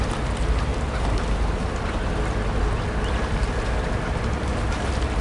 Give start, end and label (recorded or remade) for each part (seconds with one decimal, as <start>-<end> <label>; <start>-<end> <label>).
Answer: 0.0-5.2 recorded